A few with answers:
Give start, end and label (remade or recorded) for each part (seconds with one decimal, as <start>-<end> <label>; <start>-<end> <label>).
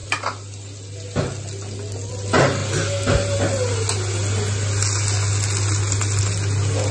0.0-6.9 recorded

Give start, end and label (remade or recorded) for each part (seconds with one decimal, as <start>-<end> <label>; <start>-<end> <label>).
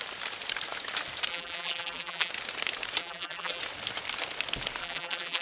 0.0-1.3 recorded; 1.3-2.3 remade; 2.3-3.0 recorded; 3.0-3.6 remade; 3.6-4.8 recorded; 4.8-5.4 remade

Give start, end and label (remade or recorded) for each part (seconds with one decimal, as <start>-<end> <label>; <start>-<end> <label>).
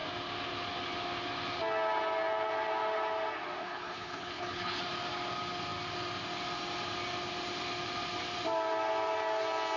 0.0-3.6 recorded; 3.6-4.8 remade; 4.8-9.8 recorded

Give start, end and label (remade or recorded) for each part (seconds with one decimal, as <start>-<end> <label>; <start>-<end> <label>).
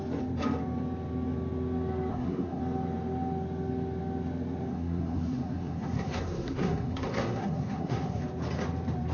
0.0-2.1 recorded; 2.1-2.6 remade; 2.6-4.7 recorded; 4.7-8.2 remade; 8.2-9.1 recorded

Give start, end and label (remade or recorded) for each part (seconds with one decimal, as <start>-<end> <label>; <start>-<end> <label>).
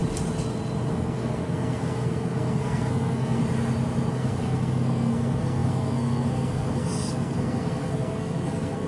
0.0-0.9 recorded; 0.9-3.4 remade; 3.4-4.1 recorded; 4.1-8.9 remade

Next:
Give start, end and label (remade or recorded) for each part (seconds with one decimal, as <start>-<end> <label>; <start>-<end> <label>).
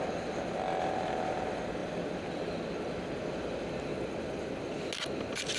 0.0-5.6 recorded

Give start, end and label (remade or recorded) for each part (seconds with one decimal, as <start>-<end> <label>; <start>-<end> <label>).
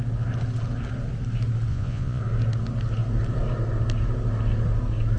0.0-1.7 recorded; 1.7-2.2 remade; 2.2-5.2 recorded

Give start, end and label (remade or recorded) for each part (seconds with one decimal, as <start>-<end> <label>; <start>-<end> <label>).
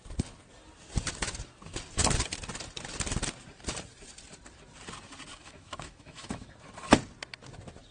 0.0-5.3 recorded; 5.3-6.5 remade; 6.5-7.9 recorded